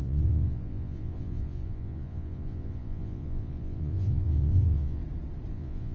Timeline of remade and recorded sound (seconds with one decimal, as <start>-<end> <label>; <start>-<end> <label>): 0.0-5.0 remade; 5.0-5.5 recorded; 5.5-5.9 remade